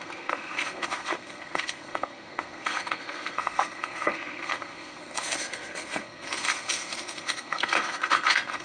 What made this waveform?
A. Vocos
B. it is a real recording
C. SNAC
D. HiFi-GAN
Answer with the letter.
C